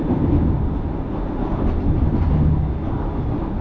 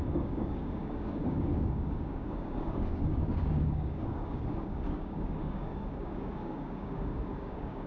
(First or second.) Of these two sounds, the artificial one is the second